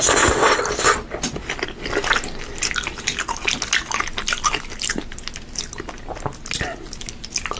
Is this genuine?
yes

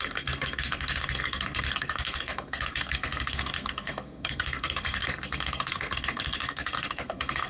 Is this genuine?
no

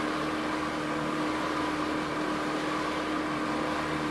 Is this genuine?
yes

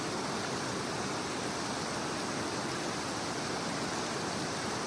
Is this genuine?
yes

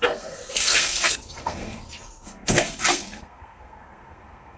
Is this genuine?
no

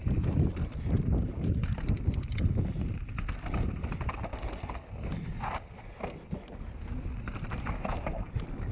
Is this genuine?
yes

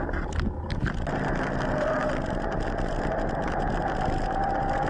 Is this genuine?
yes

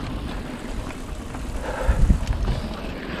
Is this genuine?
yes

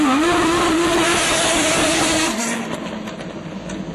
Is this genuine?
yes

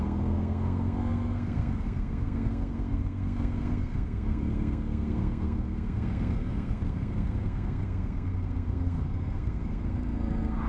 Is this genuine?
no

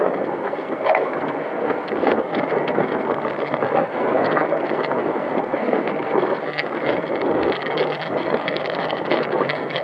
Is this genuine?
no